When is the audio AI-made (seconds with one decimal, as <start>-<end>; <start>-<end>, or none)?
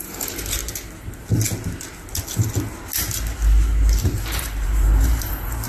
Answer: 0.0-0.6; 4.0-5.7